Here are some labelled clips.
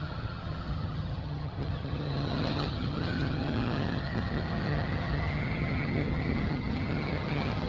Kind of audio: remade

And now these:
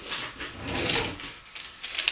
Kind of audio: recorded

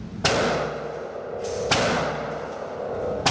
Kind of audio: recorded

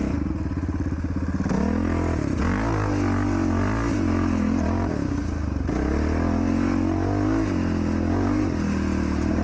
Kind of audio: recorded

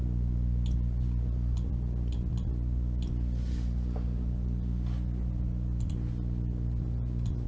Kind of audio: recorded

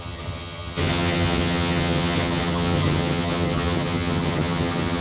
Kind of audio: remade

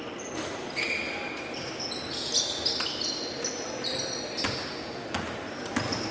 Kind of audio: recorded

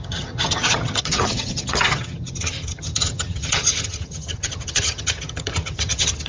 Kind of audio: remade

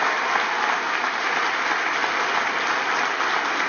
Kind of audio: recorded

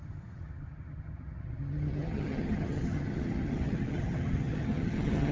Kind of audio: remade